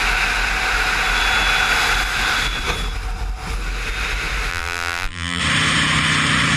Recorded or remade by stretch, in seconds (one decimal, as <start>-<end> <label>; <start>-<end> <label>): 0.0-4.5 recorded; 4.5-5.4 remade; 5.4-6.6 recorded